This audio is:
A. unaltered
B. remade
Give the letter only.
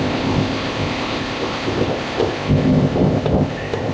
B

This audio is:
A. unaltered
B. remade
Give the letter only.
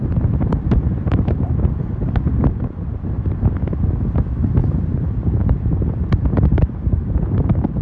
B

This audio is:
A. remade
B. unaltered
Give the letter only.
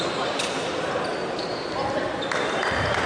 B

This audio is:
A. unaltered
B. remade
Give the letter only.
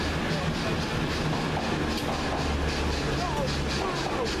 A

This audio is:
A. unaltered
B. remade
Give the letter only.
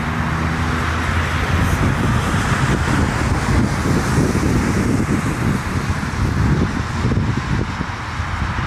A